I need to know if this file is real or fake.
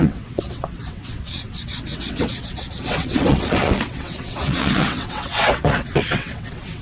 fake